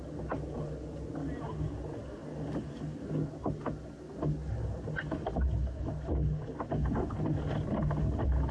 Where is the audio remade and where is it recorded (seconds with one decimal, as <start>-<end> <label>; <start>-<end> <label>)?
0.0-8.5 recorded